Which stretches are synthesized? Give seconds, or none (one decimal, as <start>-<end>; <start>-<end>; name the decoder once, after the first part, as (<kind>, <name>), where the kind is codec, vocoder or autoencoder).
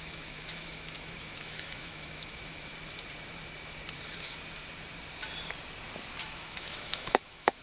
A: 0.0-2.7 (autoencoder, DAC-VAE); 6.2-7.6